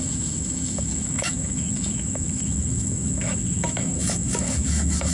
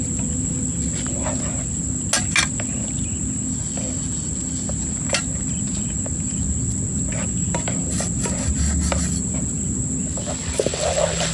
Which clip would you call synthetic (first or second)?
first